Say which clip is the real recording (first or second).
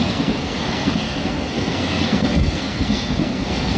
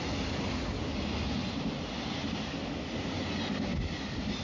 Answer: second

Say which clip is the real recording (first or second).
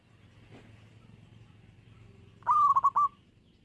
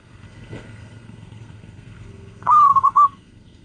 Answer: first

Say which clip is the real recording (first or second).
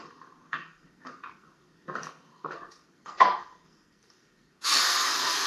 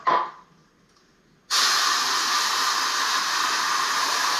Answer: second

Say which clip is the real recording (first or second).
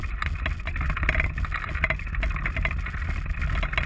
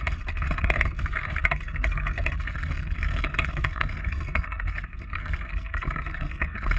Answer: first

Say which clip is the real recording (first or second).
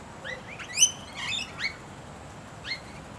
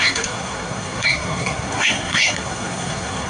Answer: first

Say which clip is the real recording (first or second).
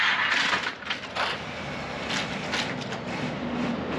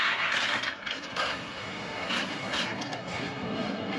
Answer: first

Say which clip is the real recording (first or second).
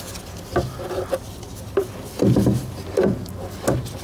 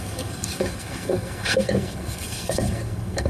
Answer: first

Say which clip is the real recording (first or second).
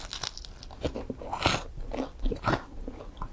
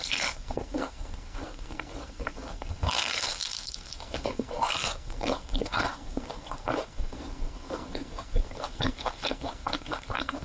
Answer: first